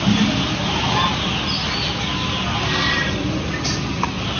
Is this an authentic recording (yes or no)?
yes